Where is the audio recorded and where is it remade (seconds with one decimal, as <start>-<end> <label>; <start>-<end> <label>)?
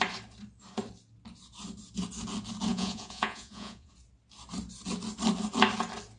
0.0-2.7 recorded; 2.7-3.9 remade; 3.9-6.2 recorded